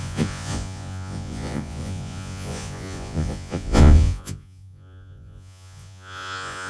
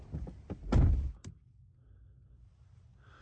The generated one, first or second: first